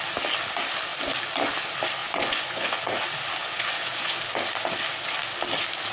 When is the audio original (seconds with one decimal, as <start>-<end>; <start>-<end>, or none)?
0.0-2.0; 2.9-3.4; 4.2-5.9